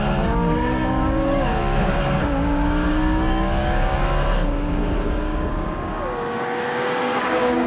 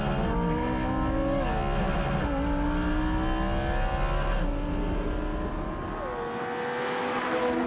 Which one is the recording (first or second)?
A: second